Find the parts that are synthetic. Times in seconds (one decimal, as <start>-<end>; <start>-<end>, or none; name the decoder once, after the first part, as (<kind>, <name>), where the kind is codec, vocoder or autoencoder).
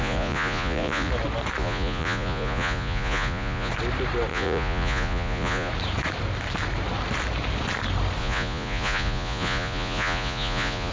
0.0-1.1 (vocoder, Vocos); 1.6-3.7; 4.3-5.7; 8.2-10.9